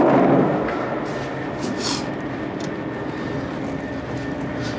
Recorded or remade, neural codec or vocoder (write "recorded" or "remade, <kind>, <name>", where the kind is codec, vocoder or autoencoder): recorded